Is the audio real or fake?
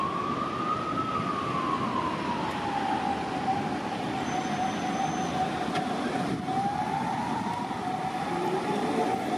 real